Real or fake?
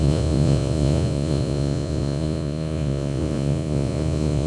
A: fake